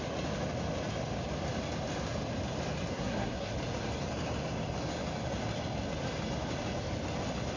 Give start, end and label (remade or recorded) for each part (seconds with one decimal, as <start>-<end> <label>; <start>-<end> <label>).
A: 0.0-2.9 recorded; 2.9-3.5 remade; 3.5-7.6 recorded